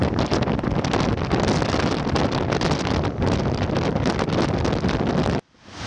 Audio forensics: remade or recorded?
recorded